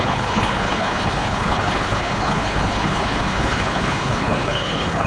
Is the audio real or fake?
fake